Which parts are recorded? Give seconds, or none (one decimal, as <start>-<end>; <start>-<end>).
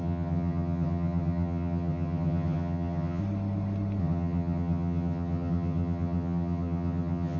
3.2-4.0